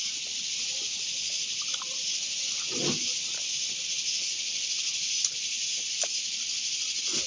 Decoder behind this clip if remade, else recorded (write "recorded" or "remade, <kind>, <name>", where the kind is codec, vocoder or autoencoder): recorded